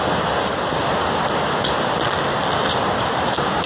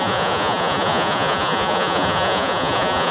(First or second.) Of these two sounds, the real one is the first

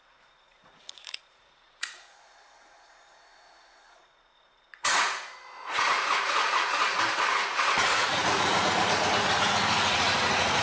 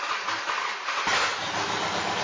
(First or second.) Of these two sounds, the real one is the second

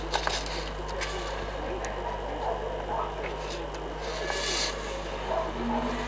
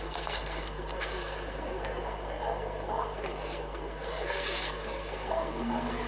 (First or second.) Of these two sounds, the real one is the first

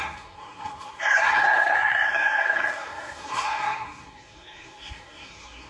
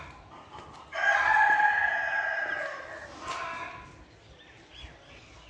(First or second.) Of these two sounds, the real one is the second